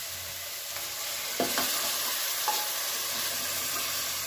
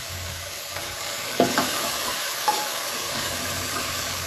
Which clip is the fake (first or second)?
second